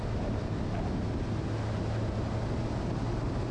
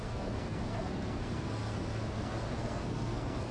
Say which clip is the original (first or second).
first